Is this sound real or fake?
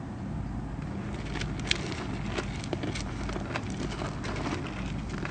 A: real